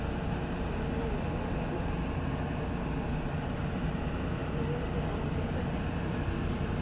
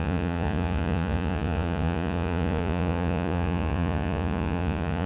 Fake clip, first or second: second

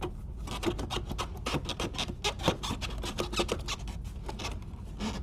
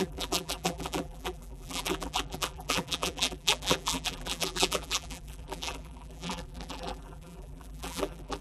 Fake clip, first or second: second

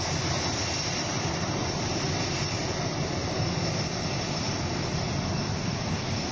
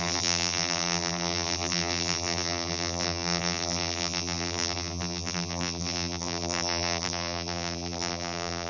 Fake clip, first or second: second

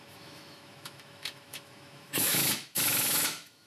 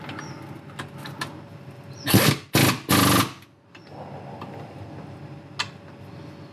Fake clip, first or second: first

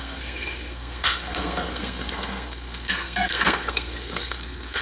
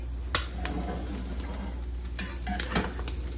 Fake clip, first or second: first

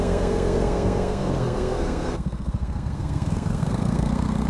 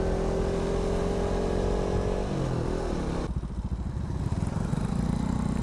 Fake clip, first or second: first